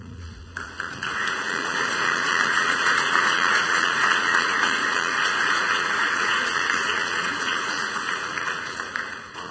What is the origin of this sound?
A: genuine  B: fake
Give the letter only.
B